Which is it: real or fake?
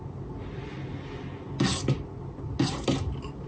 real